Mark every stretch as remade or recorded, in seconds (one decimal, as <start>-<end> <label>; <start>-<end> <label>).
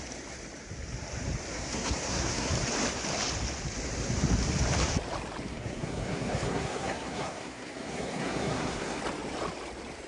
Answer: 0.0-1.5 recorded; 1.5-2.5 remade; 2.5-5.5 recorded; 5.5-9.0 remade; 9.0-10.1 recorded